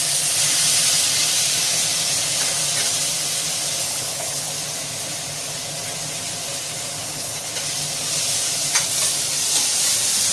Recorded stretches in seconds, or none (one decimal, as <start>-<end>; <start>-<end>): 0.0-3.8; 4.5-7.0; 7.5-10.3